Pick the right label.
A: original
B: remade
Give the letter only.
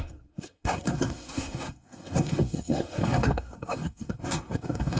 B